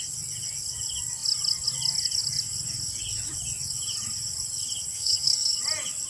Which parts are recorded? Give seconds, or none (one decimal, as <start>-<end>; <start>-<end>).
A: 0.0-4.9; 5.6-6.1